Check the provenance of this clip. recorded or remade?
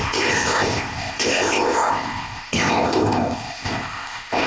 remade